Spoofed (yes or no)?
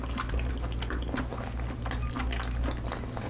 no